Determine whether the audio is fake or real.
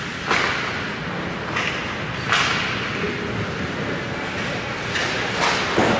real